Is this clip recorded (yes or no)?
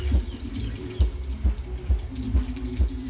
yes